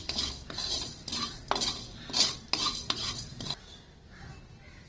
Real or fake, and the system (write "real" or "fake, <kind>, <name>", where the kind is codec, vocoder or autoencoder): real